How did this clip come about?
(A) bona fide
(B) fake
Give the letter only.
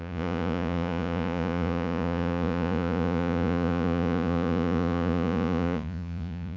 B